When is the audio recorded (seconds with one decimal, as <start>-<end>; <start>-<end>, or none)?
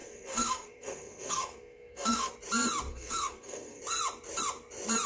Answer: 2.3-2.9; 3.8-5.1